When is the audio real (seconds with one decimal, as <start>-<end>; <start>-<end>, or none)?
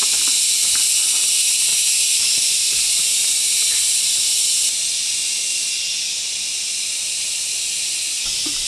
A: 0.0-8.7